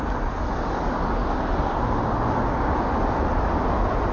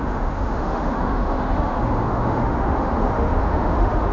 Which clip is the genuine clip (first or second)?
first